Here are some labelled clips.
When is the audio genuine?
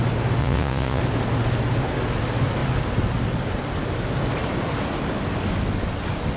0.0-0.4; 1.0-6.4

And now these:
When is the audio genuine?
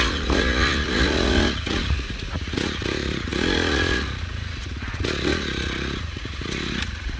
none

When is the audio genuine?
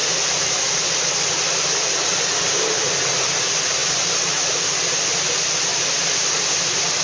0.0-7.0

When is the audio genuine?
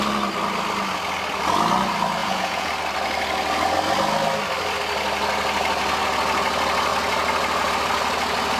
0.0-2.2; 2.7-8.6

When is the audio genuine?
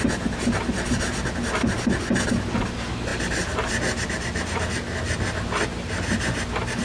0.0-6.8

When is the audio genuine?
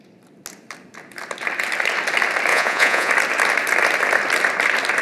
0.0-2.5; 3.1-5.0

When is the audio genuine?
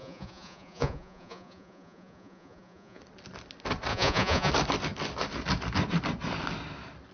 3.0-3.9; 4.5-7.1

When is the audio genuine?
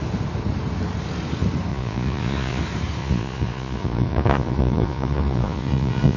0.0-1.7; 2.6-3.0